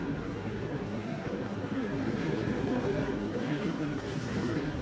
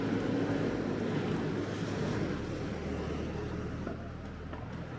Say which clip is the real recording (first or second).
second